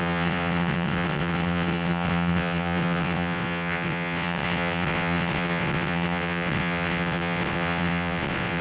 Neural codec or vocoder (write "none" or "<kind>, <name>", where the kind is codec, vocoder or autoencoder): vocoder, WaveNeXt